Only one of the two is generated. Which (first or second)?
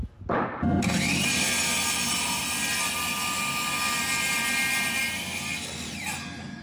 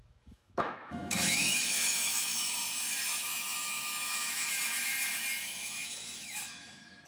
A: second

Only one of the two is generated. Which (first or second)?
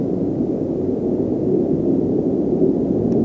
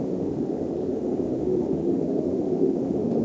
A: second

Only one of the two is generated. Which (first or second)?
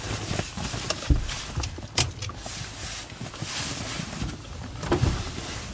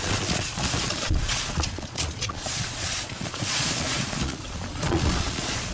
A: second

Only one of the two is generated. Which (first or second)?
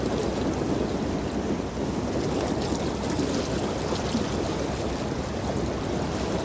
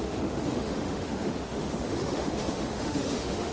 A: second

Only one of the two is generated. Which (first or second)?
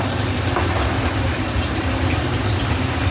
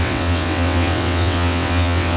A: second